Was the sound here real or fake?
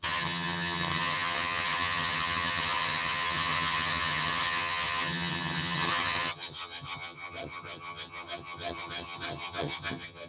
fake